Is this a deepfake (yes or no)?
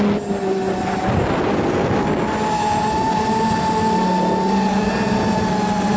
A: no